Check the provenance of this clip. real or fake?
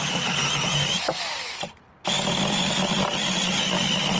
real